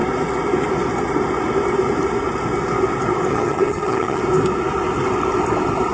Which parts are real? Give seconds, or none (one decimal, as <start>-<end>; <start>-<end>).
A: 0.0-3.3; 4.2-5.9